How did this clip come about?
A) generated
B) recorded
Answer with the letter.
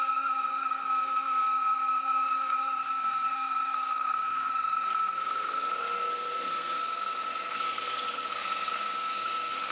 A